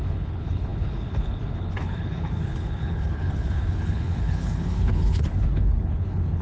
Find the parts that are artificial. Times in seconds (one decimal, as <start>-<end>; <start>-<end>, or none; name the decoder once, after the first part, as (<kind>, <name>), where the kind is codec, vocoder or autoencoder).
0.0-6.4 (codec, HILCodec)